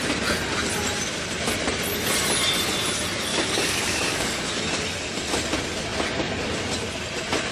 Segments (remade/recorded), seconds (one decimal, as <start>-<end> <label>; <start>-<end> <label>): 0.0-3.3 recorded; 3.3-4.6 remade; 4.6-7.5 recorded

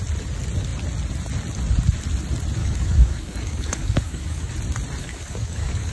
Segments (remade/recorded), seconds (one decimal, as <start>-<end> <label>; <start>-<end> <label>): 0.0-2.6 recorded; 2.6-4.5 remade; 4.5-5.0 recorded; 5.0-5.9 remade